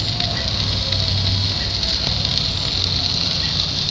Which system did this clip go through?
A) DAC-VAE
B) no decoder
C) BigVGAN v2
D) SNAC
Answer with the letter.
B